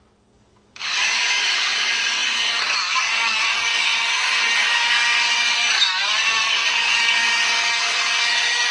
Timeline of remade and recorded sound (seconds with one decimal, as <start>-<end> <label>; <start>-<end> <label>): 0.0-8.7 remade